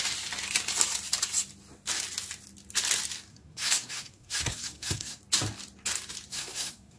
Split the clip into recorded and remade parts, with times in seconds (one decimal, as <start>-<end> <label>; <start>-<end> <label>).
0.0-3.3 recorded; 3.3-5.2 remade; 5.2-6.3 recorded; 6.3-7.0 remade